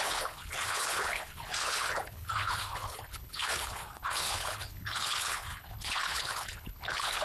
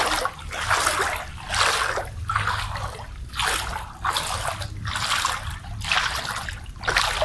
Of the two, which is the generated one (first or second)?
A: first